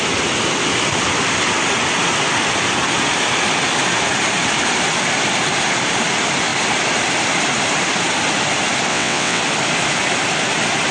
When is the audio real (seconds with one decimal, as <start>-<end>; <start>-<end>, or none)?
0.0-8.9; 9.4-10.9